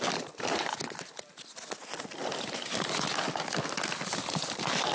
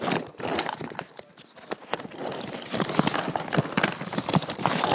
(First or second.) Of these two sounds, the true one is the first